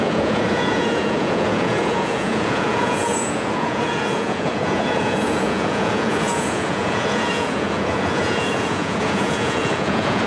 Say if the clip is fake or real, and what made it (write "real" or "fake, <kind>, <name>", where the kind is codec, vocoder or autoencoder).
fake, vocoder, Vocos